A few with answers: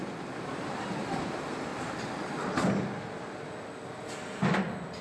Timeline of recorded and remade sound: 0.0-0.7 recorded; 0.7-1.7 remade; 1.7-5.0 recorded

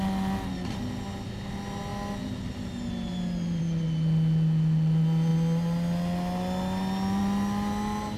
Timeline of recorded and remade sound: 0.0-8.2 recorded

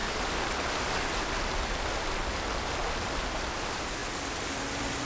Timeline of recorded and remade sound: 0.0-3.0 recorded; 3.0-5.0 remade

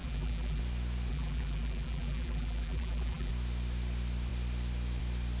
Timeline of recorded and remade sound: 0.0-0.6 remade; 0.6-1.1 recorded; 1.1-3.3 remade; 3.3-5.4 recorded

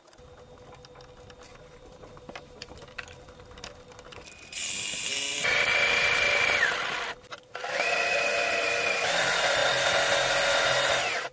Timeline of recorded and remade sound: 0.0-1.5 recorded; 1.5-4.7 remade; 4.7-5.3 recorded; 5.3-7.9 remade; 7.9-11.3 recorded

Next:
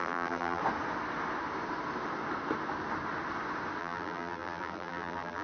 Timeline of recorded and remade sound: 0.0-0.6 remade; 0.6-3.8 recorded; 3.8-5.4 remade

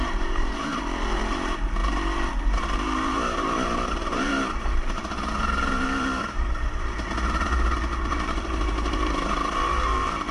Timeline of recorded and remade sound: 0.0-1.8 remade; 1.8-2.4 recorded; 2.4-10.3 remade

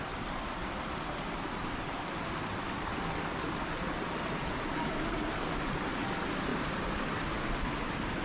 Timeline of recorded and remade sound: 0.0-6.5 recorded; 6.5-7.5 remade; 7.5-8.2 recorded